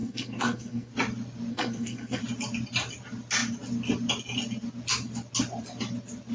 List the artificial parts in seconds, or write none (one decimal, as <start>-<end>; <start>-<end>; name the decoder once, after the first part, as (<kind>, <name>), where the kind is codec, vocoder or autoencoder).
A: 0.0-0.9 (codec, SNAC); 1.5-2.2